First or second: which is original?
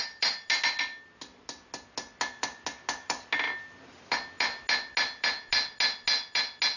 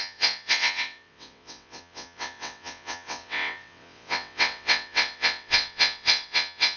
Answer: first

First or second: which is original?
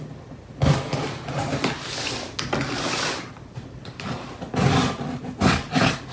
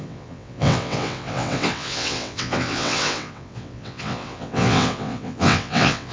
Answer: first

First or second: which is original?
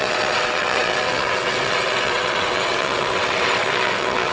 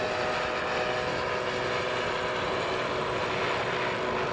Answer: second